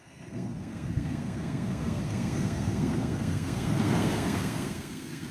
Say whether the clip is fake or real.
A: fake